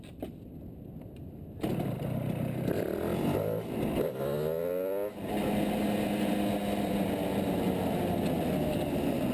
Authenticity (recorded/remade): recorded